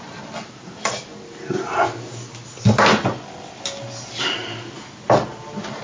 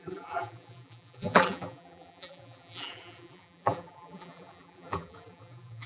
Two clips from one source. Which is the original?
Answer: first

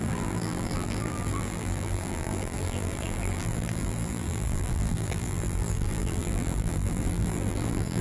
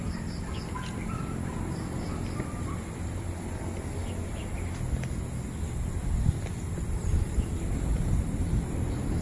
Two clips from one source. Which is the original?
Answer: second